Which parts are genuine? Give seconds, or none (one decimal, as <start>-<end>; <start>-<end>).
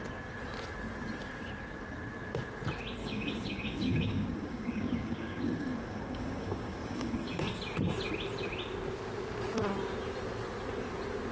0.0-3.0; 7.6-11.3